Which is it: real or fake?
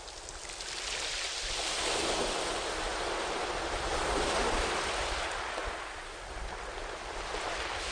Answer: real